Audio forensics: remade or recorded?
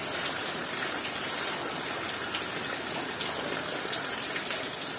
recorded